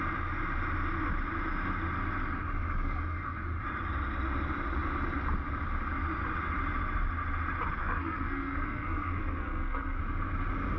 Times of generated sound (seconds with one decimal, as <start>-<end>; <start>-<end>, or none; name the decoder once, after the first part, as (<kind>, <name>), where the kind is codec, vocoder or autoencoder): 7.8-10.0 (codec, SNAC)

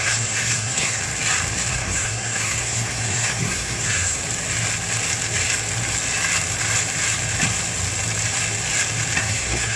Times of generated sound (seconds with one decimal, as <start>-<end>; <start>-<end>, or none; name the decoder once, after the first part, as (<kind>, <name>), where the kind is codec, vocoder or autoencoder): 0.0-1.0 (codec, SNAC); 1.7-4.2; 9.2-9.8

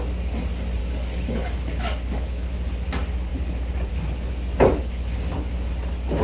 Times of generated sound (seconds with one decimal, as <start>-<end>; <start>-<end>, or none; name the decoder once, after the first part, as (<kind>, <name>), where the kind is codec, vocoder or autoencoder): 0.8-2.5 (codec, DAC)

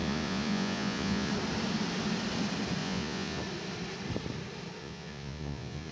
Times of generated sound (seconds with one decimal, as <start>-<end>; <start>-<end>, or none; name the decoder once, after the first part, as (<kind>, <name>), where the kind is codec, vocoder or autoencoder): 0.0-1.3 (vocoder, Vocos); 2.8-3.4; 4.8-5.9

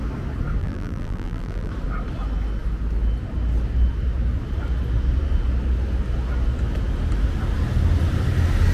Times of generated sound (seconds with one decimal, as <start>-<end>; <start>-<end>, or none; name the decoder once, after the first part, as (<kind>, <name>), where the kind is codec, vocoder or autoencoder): 0.6-1.7 (vocoder, BigVGAN v2)